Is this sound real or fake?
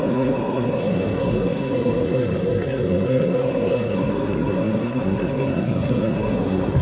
fake